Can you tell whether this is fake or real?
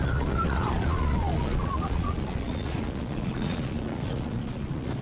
fake